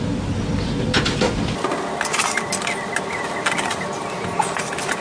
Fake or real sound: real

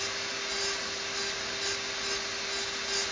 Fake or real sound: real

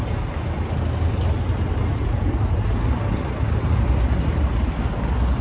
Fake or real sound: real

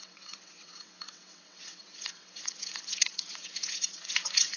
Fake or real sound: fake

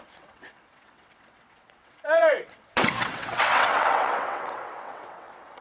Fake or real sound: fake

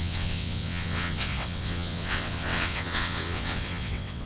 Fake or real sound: fake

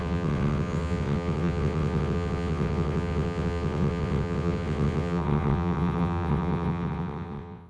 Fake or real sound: fake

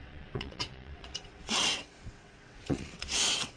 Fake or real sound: fake